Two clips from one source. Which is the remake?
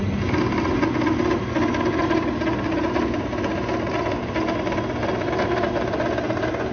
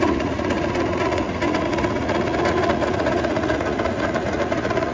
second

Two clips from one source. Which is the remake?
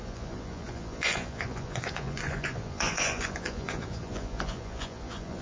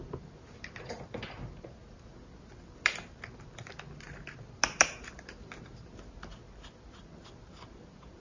first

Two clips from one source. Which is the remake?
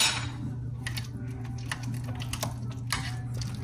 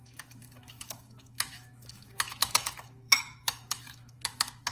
second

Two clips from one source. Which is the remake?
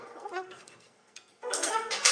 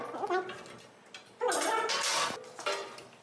first